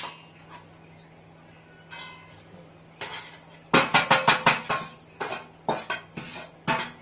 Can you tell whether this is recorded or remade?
recorded